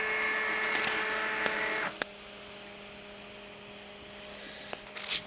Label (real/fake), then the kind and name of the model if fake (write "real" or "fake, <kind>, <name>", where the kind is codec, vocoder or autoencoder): real